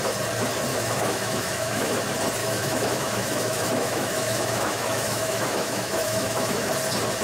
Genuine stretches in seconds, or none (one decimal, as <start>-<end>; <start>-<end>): 0.0-0.7; 2.0-2.4; 6.7-7.2